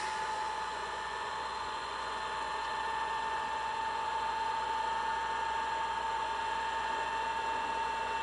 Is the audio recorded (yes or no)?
no